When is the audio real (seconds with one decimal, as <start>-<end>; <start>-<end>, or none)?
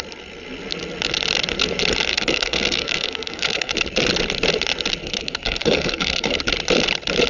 0.0-2.1; 3.7-5.0; 6.4-7.3